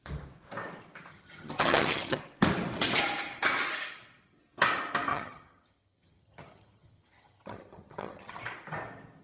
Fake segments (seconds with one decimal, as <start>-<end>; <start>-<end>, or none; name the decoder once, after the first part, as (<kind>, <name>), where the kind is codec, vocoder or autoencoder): 1.1-2.2 (vocoder, HiFi-GAN); 5.1-8.4

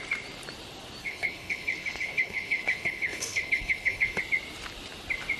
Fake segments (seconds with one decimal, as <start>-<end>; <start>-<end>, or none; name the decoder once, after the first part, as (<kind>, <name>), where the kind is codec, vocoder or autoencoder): 1.0-4.2 (codec, HILCodec)

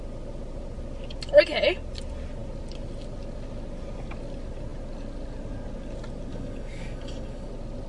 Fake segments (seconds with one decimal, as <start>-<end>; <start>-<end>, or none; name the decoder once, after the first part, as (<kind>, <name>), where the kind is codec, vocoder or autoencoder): 6.3-7.5 (codec, DAC)

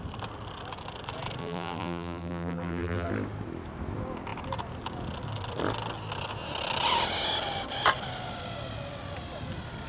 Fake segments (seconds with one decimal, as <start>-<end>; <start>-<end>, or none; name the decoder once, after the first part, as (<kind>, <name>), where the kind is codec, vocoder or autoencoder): 1.4-3.1 (vocoder, BigVGAN v2)

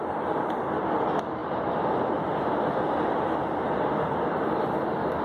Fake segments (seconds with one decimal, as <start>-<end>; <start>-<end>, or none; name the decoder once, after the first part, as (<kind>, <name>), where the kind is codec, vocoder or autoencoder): none